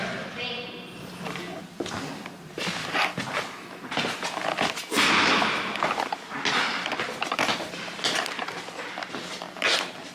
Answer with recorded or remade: recorded